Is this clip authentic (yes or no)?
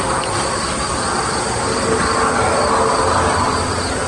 yes